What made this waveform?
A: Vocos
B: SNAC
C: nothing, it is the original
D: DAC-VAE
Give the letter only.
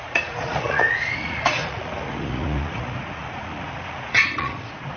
A